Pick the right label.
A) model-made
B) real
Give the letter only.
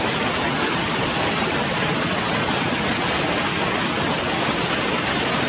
B